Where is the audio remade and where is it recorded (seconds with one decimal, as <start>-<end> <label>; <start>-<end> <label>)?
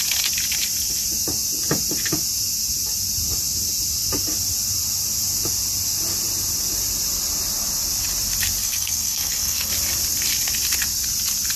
0.0-8.6 recorded; 8.6-9.7 remade; 9.7-11.6 recorded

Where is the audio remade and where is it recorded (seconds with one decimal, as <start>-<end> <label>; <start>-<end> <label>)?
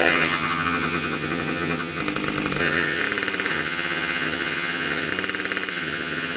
0.0-2.0 remade; 2.0-2.6 recorded; 2.6-3.0 remade; 3.0-3.5 recorded; 3.5-5.1 remade; 5.1-5.7 recorded; 5.7-6.4 remade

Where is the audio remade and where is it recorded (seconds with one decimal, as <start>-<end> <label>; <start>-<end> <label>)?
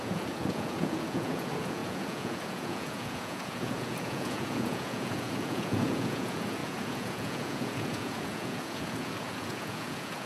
0.0-10.3 remade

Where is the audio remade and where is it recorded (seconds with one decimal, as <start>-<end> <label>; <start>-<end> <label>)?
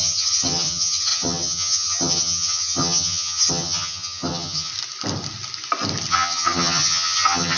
0.0-4.7 remade; 4.7-6.1 recorded; 6.1-7.6 remade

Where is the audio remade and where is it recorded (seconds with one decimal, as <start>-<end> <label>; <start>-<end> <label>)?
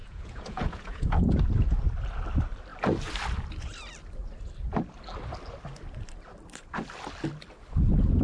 0.0-1.4 remade; 1.4-8.2 recorded